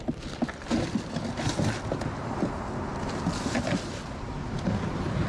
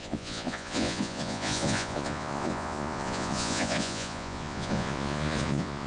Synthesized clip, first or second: second